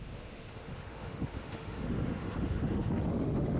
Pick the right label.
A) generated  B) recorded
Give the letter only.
A